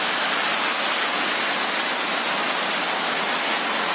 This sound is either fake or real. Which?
real